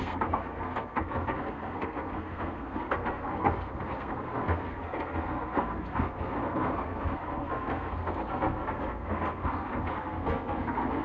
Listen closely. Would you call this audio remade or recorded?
remade